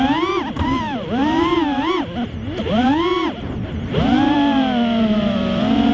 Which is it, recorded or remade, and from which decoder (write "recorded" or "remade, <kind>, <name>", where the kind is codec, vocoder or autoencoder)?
remade, vocoder, BigVGAN v2